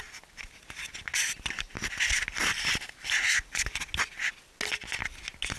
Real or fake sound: real